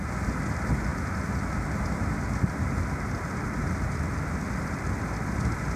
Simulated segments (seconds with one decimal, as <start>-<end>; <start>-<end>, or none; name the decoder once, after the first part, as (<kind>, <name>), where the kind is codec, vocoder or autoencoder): none